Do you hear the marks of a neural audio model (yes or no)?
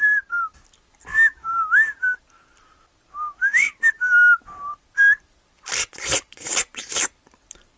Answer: no